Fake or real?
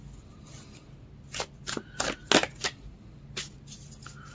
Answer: real